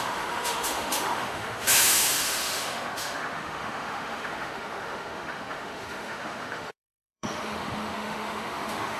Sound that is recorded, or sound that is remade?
remade